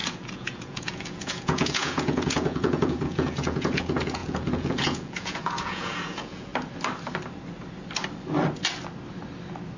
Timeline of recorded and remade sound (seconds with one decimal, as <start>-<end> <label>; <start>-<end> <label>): 0.0-6.5 remade; 6.5-9.8 recorded